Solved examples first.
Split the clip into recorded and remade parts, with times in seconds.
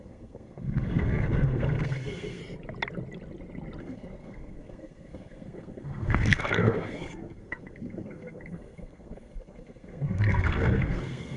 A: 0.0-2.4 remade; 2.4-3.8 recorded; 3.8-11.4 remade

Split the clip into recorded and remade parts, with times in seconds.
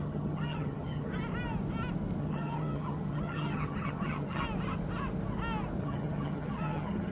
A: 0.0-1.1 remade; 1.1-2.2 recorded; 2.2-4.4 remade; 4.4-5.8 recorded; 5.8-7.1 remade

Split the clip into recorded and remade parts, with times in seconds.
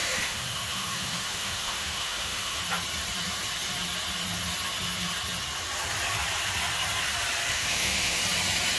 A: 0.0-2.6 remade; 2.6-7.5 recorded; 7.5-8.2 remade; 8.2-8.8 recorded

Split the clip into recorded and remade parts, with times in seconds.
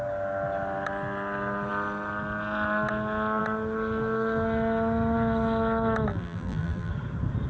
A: 0.0-6.1 recorded; 6.1-6.9 remade; 6.9-7.5 recorded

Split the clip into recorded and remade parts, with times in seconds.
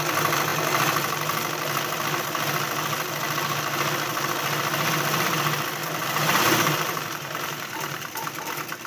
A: 0.0-5.8 recorded; 5.8-8.1 remade; 8.1-8.9 recorded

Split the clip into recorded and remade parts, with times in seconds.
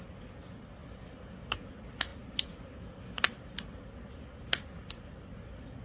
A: 0.0-5.8 recorded